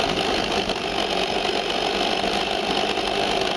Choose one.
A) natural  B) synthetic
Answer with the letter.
A